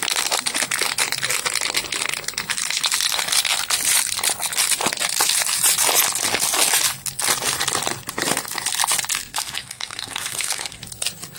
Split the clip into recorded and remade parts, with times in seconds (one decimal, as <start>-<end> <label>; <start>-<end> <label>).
0.0-9.3 recorded; 9.3-10.8 remade; 10.8-11.4 recorded